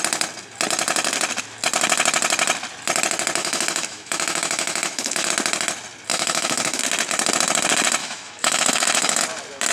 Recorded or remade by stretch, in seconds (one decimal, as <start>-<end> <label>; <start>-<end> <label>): 0.0-3.4 recorded; 3.4-5.3 remade; 5.3-6.1 recorded; 6.1-6.8 remade; 6.8-8.0 recorded; 8.0-9.2 remade; 9.2-9.7 recorded